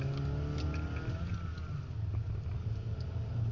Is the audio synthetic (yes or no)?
no